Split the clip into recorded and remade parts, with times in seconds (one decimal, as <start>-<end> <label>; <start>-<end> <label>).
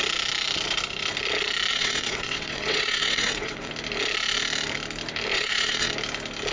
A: 0.0-1.7 recorded; 1.7-3.7 remade; 3.7-5.3 recorded; 5.3-5.9 remade; 5.9-6.5 recorded